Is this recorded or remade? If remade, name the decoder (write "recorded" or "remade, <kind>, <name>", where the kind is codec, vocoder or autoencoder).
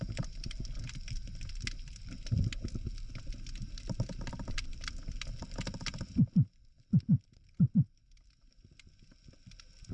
recorded